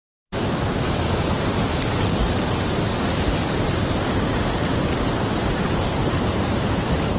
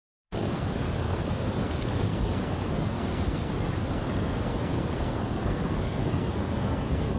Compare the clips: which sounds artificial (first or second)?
second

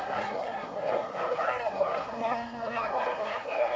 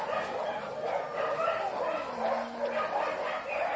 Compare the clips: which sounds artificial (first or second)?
first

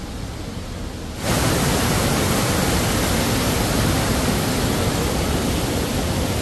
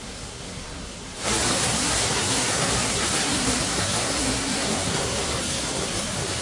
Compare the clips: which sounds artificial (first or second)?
second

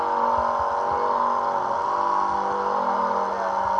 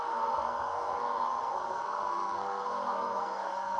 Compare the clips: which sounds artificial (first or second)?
second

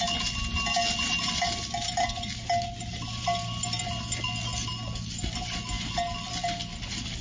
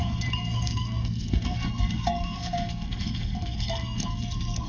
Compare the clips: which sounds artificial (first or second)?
second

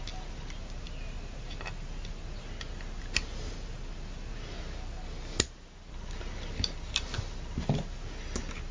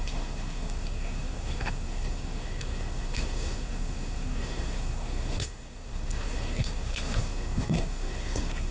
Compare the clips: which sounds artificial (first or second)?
second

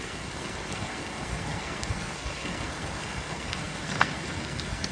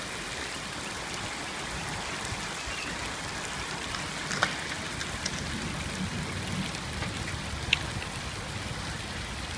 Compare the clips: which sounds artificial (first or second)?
first